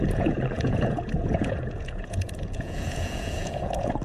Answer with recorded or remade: remade